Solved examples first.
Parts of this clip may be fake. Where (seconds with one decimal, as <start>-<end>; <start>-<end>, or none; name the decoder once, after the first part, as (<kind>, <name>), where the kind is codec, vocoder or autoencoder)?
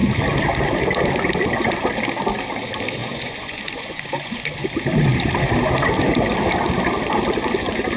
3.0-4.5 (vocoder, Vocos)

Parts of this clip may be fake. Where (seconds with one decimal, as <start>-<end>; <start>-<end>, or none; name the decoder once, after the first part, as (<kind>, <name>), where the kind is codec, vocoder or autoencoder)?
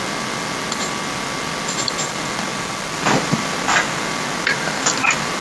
none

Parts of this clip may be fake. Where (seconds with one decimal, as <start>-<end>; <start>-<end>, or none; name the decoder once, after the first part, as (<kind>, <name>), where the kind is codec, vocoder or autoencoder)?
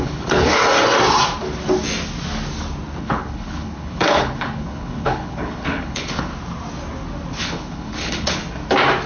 0.0-0.6 (codec, HILCodec); 3.0-6.3; 7.4-8.4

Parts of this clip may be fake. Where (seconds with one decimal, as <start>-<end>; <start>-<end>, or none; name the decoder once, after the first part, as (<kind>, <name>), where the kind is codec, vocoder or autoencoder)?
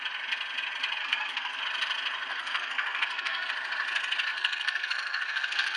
1.0-1.6 (codec, SNAC); 2.3-3.5; 4.3-5.8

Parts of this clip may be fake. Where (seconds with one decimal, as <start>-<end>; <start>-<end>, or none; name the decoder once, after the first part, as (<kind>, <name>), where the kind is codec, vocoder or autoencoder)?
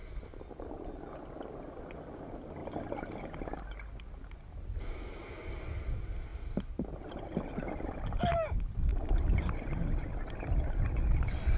none